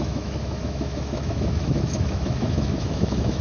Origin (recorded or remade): remade